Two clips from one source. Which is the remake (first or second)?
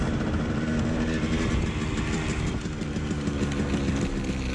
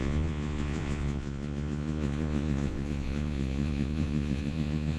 second